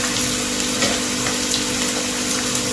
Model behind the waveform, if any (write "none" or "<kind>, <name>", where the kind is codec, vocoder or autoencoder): none